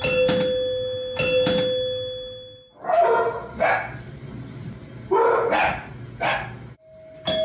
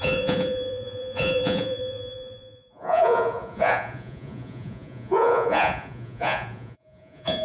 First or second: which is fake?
second